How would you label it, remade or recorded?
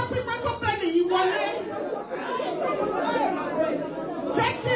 recorded